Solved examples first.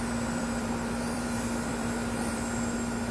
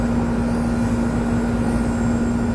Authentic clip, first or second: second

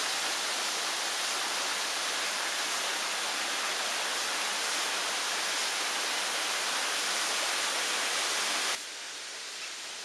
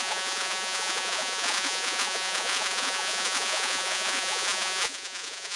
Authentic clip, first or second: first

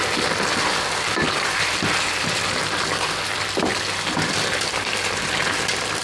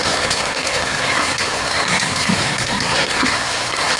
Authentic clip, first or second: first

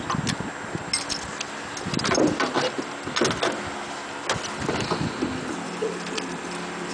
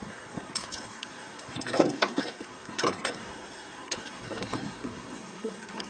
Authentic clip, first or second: first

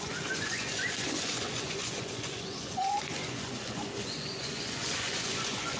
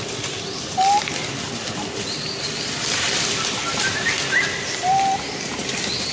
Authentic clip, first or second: second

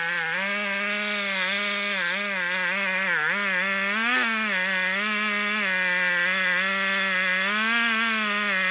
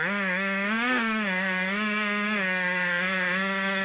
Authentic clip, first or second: first